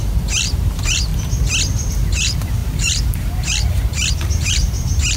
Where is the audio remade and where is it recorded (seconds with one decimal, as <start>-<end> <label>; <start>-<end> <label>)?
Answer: 0.0-1.1 remade; 1.1-1.9 recorded; 1.9-5.2 remade